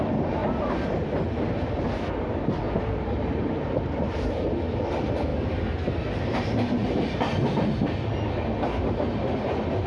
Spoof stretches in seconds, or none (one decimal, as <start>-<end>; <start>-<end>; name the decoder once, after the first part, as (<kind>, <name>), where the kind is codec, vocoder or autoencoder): 2.6-4.1 (vocoder, BigVGAN v2); 6.8-7.4